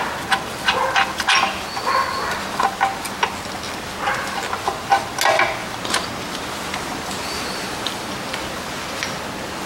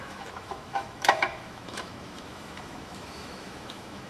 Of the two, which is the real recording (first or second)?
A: first